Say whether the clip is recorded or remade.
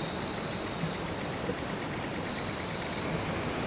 recorded